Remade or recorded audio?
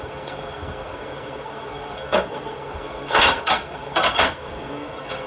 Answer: remade